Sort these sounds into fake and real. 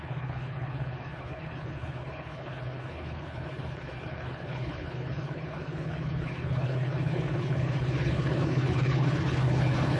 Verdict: fake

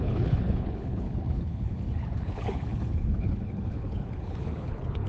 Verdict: fake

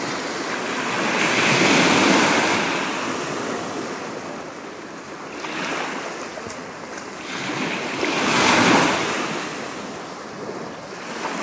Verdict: real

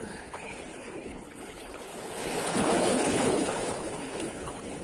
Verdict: fake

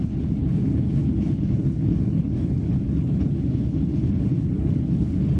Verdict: fake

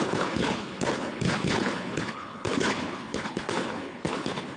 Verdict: fake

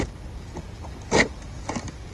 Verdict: real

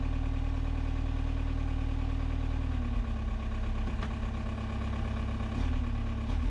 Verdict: real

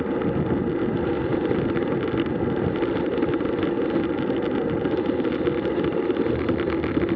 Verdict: real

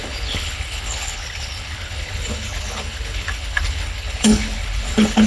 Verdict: fake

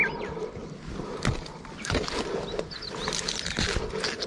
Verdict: real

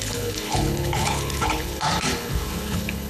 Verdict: fake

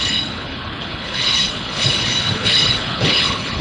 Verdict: fake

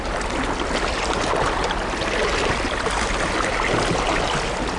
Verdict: real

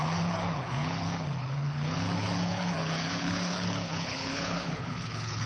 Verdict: fake